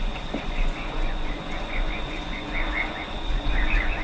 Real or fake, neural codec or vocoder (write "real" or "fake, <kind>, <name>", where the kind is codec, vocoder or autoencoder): fake, vocoder, Vocos